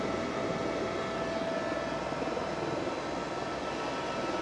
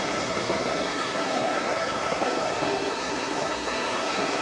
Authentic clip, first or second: first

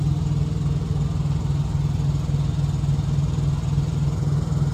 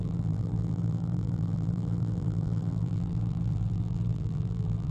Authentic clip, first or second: first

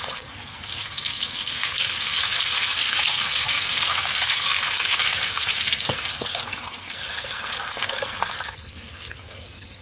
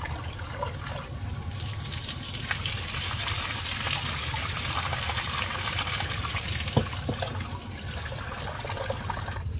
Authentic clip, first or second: second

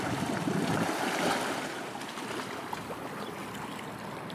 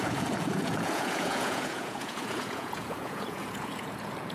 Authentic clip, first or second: first